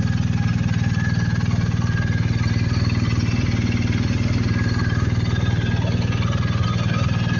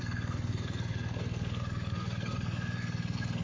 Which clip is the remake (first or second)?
second